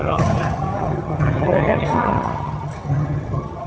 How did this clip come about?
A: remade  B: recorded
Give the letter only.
A